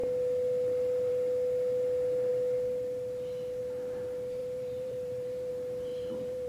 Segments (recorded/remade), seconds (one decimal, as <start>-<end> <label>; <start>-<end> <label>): 0.0-4.4 recorded; 4.4-5.5 remade; 5.5-5.9 recorded; 5.9-6.5 remade